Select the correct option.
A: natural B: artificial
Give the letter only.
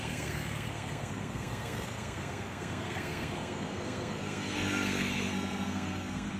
B